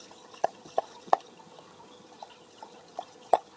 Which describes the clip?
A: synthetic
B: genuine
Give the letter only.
A